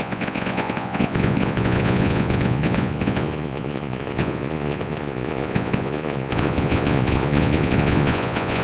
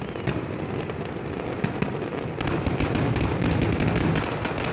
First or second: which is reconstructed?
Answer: first